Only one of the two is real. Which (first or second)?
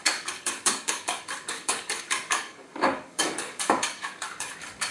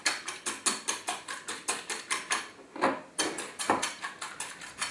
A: second